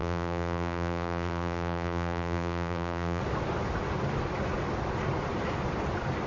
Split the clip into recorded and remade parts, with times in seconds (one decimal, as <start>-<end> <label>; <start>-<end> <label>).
0.0-3.2 remade; 3.2-6.3 recorded